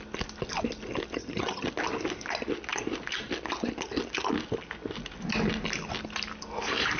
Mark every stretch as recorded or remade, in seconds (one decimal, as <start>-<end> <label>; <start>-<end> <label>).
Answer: 0.0-1.2 recorded; 1.2-1.7 remade; 1.7-7.0 recorded